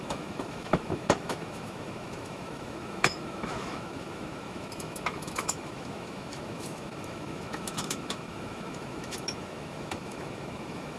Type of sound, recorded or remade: remade